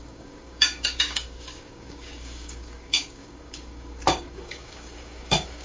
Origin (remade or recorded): remade